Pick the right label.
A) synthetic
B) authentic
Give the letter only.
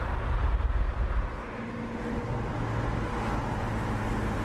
B